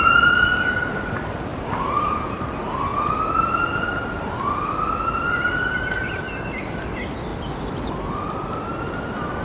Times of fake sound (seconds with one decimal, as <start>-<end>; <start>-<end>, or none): 1.5-2.5; 7.3-7.9